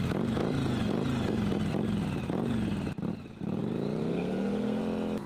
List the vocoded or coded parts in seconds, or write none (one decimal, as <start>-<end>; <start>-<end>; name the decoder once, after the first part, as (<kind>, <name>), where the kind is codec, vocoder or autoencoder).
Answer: 4.0-4.8 (codec, SNAC)